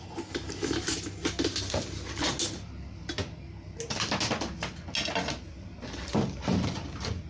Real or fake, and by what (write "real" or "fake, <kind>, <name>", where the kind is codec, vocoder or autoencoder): real